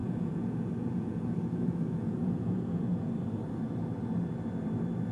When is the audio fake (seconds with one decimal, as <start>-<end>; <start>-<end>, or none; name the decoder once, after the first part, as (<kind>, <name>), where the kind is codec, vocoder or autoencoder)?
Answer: 0.0-3.1 (vocoder, Vocos)